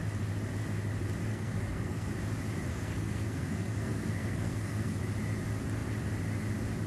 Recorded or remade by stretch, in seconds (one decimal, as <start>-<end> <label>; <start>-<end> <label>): 0.0-1.3 recorded; 1.3-2.1 remade; 2.1-2.7 recorded; 2.7-5.0 remade; 5.0-6.9 recorded